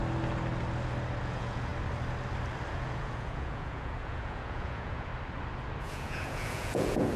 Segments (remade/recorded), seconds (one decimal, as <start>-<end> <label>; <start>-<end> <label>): 0.0-1.2 recorded; 1.2-1.7 remade; 1.7-2.7 recorded; 2.7-5.1 remade; 5.1-5.8 recorded; 5.8-7.2 remade